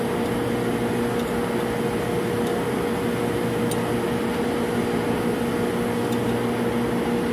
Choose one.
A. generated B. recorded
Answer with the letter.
B